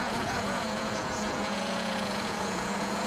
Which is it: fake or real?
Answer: fake